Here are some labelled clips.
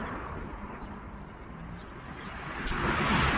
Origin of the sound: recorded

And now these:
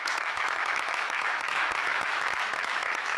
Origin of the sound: remade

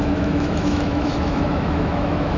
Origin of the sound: remade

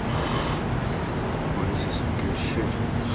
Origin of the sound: recorded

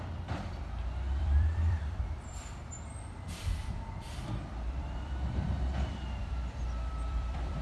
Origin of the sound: remade